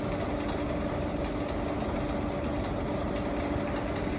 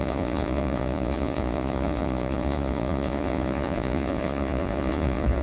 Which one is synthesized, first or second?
second